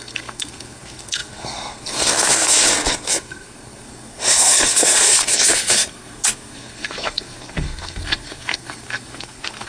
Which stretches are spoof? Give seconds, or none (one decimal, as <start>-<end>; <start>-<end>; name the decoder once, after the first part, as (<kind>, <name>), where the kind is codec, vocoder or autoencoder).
0.0-9.7 (codec, SNAC)